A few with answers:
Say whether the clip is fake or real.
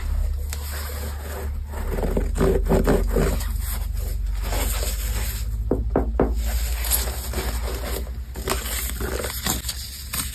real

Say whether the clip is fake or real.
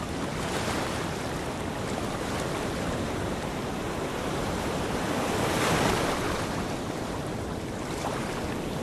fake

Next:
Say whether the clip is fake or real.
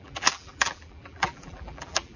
fake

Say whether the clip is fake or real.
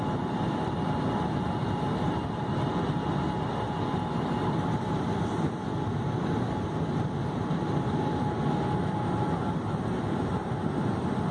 fake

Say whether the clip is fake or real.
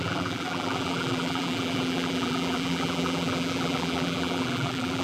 fake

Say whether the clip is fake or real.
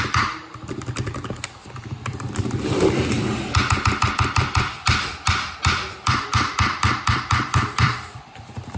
fake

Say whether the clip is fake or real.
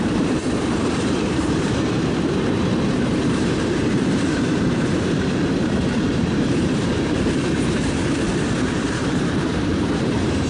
fake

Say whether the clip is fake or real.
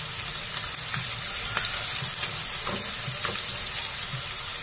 real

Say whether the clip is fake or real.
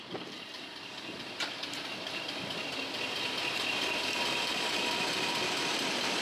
fake